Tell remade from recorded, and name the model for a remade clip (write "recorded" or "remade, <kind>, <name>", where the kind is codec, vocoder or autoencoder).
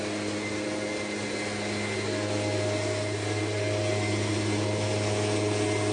recorded